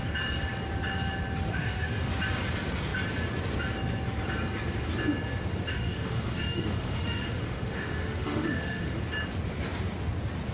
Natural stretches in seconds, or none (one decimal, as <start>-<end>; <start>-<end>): 0.0-1.5; 2.1-5.7; 9.0-10.5